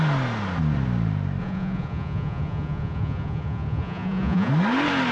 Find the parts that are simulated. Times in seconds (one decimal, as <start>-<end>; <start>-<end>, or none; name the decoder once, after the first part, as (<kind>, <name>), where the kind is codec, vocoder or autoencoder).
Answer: 1.4-4.5 (vocoder, Vocos)